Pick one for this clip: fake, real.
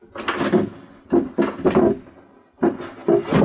real